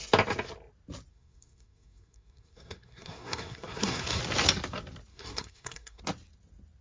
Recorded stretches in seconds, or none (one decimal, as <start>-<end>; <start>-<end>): 0.0-1.1; 4.2-5.1; 6.0-6.8